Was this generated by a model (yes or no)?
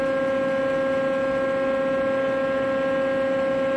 no